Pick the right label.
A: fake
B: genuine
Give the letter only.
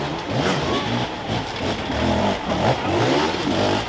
B